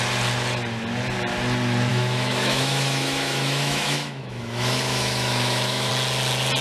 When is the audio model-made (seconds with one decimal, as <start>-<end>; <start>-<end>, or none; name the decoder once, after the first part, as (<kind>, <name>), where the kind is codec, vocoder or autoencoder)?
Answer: 1.9-5.9 (autoencoder, DAC-VAE)